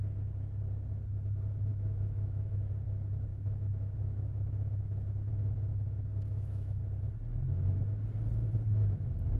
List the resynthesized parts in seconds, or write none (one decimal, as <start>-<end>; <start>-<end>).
1.7-2.7; 3.3-5.3; 6.1-6.8